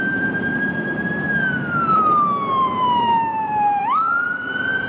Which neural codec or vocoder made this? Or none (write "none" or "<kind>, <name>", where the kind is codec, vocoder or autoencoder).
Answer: vocoder, BigVGAN v2